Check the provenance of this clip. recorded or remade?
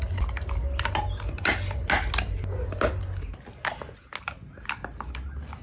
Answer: recorded